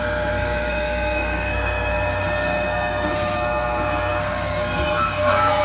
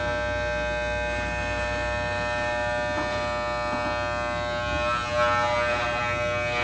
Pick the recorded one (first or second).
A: second